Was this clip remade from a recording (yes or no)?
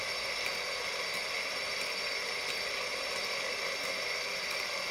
no